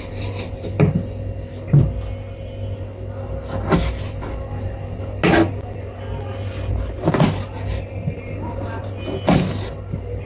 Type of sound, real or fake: real